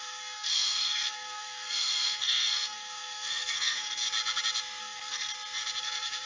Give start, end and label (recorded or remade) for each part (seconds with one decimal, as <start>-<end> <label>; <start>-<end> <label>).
0.0-4.0 remade; 4.0-4.8 recorded; 4.8-5.3 remade; 5.3-5.8 recorded; 5.8-6.3 remade